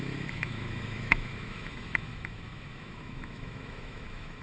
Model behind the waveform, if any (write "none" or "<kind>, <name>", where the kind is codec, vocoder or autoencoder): autoencoder, DAC-VAE